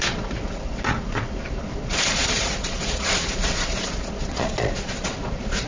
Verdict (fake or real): fake